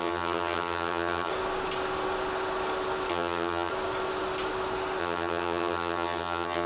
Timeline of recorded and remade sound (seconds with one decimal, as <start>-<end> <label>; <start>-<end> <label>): 0.0-1.3 remade; 1.3-3.1 recorded; 3.1-3.7 remade; 3.7-5.0 recorded; 5.0-6.7 remade